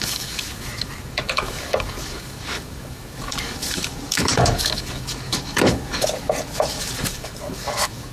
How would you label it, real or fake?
fake